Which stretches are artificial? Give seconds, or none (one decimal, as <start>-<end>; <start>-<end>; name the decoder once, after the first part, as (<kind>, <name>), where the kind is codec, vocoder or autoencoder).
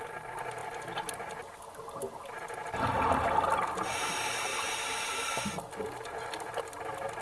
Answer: none